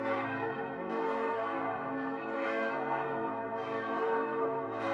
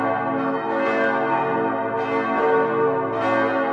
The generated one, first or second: first